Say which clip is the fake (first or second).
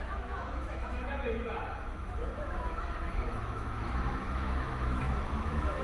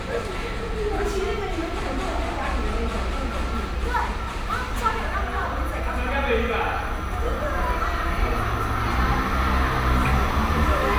first